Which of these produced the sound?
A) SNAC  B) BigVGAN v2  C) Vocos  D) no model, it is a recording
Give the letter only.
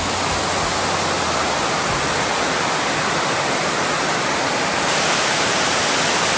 D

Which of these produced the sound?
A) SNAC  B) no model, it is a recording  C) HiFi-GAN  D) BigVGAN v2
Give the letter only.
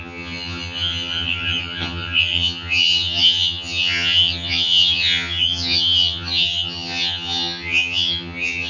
C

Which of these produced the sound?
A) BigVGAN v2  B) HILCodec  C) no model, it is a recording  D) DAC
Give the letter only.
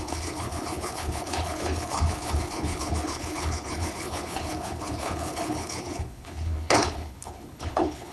B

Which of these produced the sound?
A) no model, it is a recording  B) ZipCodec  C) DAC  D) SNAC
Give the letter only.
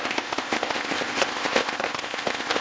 B